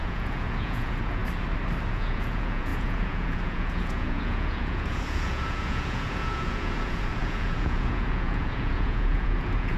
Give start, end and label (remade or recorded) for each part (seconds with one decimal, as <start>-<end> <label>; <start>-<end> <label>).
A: 0.0-1.2 remade; 1.2-1.9 recorded; 1.9-9.8 remade